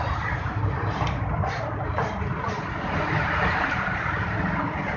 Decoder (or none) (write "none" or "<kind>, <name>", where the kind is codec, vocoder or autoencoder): none